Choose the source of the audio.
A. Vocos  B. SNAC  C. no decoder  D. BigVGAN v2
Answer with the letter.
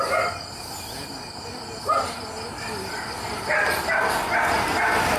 C